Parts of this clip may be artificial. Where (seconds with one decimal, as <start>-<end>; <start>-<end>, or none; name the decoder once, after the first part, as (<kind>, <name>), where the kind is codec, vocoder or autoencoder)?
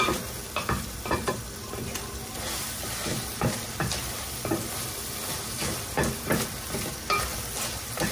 3.1-3.8 (vocoder, BigVGAN v2)